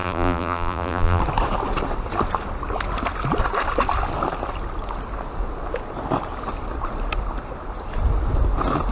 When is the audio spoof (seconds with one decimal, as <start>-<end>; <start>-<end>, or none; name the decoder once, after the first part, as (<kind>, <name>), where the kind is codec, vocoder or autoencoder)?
0.0-1.2 (vocoder, BigVGAN v2)